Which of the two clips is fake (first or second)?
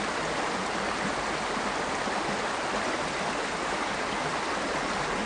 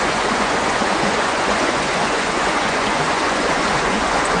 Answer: second